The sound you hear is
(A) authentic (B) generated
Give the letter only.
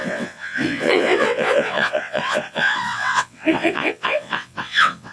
B